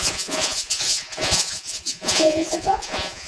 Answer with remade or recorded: remade